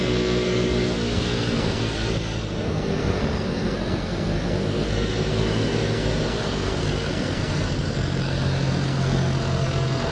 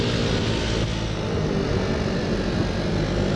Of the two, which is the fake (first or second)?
first